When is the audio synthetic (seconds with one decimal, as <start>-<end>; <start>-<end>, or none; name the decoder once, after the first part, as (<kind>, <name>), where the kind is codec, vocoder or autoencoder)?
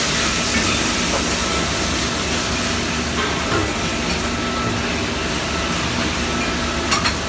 none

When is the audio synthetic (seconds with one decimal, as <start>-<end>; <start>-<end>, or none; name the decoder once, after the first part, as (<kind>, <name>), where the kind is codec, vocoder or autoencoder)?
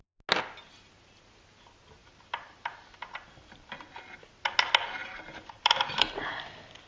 2.0-3.9 (vocoder, BigVGAN v2); 5.0-6.4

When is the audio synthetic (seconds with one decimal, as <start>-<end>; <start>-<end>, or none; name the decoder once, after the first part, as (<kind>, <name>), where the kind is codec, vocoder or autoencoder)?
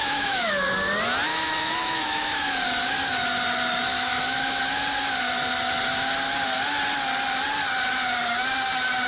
0.0-0.5 (autoencoder, DAC-VAE); 1.3-2.5; 3.9-4.6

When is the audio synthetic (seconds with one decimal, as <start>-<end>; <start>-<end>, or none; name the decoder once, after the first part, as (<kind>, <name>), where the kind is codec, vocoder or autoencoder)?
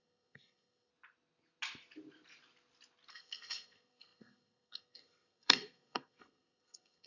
0.0-0.9 (codec, SNAC); 3.1-7.1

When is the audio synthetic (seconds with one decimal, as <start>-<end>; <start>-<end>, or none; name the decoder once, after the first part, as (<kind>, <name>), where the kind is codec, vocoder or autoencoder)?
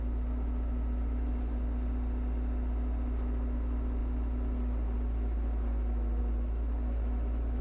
none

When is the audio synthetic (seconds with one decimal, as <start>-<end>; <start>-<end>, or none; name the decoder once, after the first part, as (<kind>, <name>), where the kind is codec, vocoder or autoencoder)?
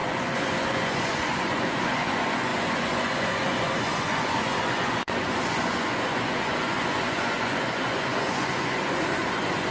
0.0-9.7 (vocoder, Vocos)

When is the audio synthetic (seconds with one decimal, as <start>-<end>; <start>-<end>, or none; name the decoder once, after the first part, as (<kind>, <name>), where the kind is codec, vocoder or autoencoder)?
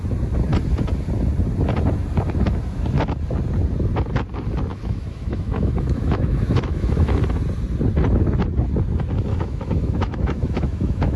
4.7-7.2 (autoencoder, DAC-VAE); 9.3-11.2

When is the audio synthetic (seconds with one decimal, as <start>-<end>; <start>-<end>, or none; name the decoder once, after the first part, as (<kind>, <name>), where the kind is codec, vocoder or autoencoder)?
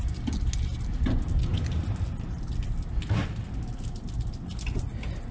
none